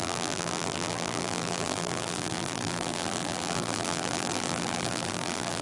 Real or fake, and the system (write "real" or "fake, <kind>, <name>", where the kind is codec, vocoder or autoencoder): fake, vocoder, BigVGAN v2